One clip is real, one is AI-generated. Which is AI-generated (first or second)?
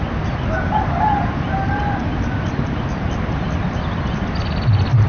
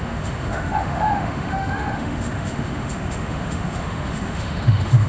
second